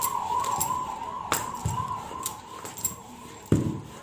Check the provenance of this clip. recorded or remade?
recorded